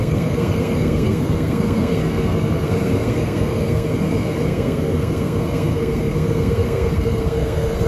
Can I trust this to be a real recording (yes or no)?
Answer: no